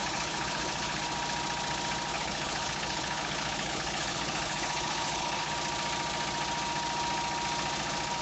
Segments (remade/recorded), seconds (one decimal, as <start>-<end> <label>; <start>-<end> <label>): 0.0-1.0 remade; 1.0-2.1 recorded; 2.1-5.5 remade; 5.5-8.2 recorded